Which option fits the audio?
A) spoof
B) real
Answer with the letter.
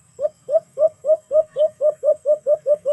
A